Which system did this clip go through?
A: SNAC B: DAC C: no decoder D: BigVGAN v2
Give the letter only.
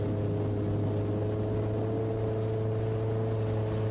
C